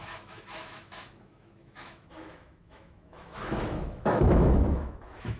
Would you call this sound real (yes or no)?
no